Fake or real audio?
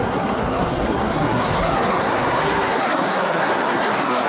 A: fake